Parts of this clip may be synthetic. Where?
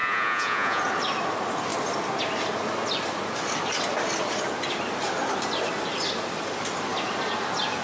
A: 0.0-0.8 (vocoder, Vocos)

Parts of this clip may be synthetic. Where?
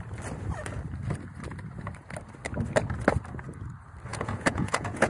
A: 4.1-5.1 (vocoder, Vocos)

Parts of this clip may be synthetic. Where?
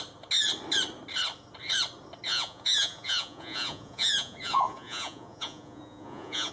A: 2.3-6.5 (vocoder, Vocos)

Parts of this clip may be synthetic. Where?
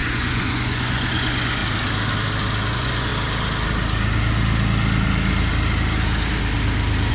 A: 0.0-1.6 (vocoder, Vocos); 2.7-3.1